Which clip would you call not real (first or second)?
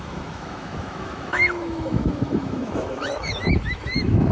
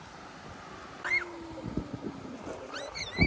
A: first